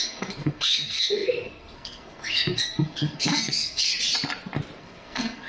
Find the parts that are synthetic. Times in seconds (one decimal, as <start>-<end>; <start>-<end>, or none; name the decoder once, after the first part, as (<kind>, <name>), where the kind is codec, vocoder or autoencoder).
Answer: 0.0-3.9 (codec, SNAC); 4.8-5.5